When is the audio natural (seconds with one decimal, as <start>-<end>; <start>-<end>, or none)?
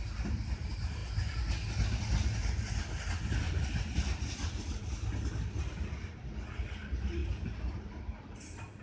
0.0-8.8